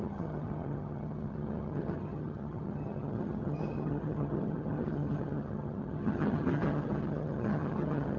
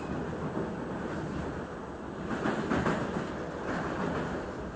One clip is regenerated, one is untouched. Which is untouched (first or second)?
second